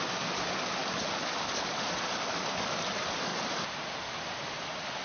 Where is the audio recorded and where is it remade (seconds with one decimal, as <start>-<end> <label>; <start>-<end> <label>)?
0.0-3.3 recorded; 3.3-5.0 remade

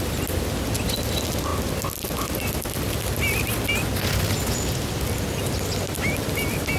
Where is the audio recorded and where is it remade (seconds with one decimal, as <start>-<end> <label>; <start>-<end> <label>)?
0.0-6.8 recorded

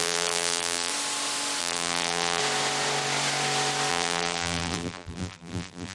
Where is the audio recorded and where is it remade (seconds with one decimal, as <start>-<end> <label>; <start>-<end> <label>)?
0.0-0.9 remade; 0.9-1.6 recorded; 1.6-2.4 remade; 2.4-3.9 recorded; 3.9-5.9 remade

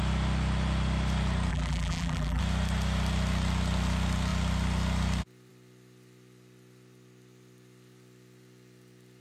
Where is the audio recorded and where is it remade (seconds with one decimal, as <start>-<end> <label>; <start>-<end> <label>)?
0.0-1.5 recorded; 1.5-2.4 remade; 2.4-9.2 recorded

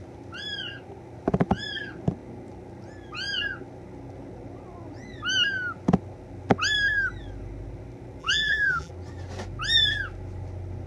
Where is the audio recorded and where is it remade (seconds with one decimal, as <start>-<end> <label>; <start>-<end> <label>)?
0.0-8.2 recorded; 8.2-8.9 remade; 8.9-10.9 recorded